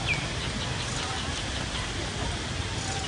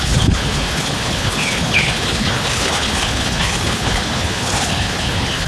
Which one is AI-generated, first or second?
second